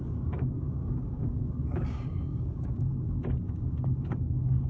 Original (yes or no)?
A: no